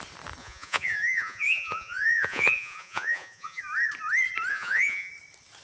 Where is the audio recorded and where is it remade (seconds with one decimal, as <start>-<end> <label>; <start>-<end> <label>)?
0.0-0.4 recorded; 0.4-3.6 remade; 3.6-4.5 recorded; 4.5-5.1 remade; 5.1-5.6 recorded